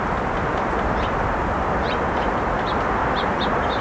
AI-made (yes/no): yes